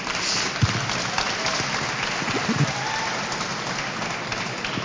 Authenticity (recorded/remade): recorded